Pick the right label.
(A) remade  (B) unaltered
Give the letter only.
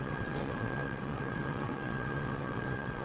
A